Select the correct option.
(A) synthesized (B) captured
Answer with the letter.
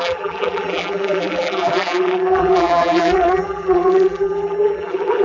A